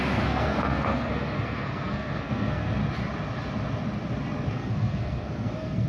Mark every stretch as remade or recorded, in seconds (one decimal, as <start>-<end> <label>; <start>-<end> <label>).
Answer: 0.0-2.8 remade; 2.8-4.5 recorded; 4.5-5.9 remade